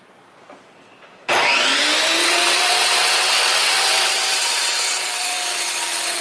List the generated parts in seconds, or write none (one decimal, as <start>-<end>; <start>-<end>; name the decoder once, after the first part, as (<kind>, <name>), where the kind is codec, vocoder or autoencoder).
2.2-6.2 (vocoder, WaveNeXt)